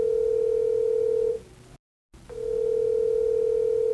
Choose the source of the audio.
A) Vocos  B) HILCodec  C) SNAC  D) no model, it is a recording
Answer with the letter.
D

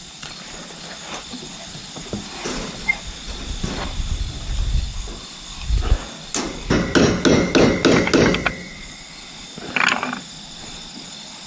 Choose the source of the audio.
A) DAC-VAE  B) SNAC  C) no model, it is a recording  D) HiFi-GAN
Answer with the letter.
C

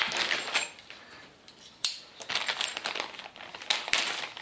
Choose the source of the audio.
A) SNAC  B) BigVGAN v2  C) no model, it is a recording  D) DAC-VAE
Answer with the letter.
C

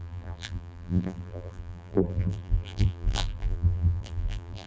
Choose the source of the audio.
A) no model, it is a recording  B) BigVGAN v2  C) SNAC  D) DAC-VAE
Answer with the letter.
B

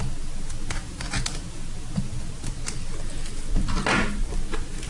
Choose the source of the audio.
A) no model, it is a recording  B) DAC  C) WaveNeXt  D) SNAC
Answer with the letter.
A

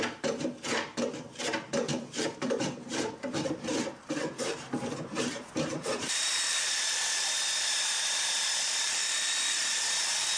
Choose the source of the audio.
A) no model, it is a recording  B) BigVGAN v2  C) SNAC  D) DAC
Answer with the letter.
B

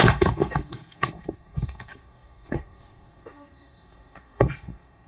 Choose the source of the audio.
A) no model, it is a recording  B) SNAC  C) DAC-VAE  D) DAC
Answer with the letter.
B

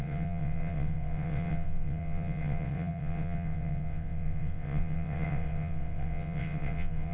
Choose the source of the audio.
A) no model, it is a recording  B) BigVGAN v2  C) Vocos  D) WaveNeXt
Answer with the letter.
D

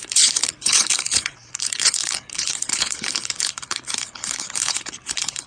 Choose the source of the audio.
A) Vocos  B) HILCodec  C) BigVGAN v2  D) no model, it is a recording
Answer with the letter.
B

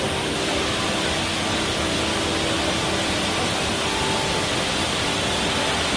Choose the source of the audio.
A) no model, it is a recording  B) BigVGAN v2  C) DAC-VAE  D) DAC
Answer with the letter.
A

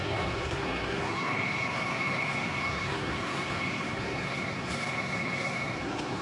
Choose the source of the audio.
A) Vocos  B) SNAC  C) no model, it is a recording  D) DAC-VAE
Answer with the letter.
B